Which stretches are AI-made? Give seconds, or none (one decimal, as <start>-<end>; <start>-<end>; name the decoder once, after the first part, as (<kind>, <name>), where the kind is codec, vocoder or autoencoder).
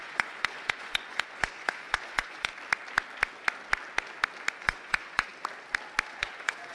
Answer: 0.0-2.5 (vocoder, Vocos); 4.5-5.3; 6.1-6.7